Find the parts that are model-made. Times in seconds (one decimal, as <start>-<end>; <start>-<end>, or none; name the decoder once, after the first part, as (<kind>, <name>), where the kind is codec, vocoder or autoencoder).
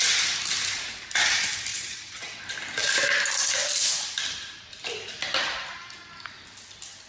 1.7-2.4 (vocoder, WaveNeXt)